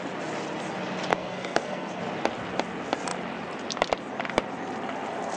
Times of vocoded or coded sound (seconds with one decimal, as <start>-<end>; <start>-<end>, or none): 1.1-2.0